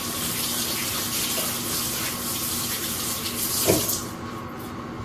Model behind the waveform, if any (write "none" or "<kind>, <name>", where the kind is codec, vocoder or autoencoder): none